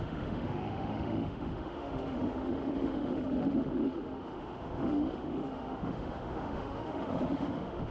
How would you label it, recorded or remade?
remade